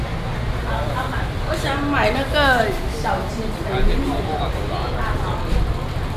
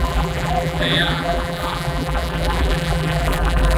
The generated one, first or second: second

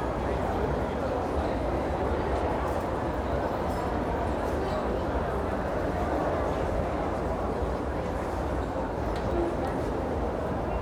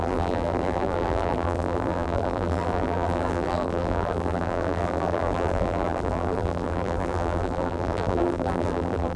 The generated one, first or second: second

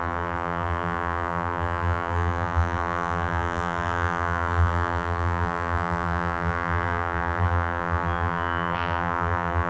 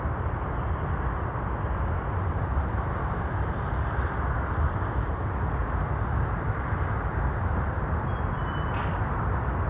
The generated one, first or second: first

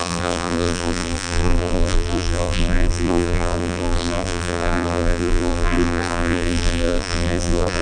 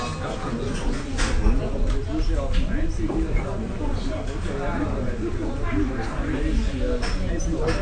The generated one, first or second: first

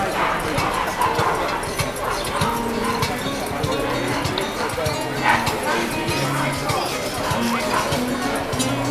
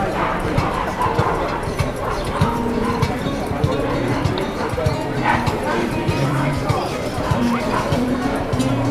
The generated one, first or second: second